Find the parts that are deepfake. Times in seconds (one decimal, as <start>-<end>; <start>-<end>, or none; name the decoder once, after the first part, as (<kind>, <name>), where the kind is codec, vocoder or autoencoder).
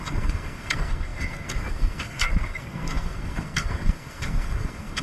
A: 0.0-5.0 (codec, SNAC)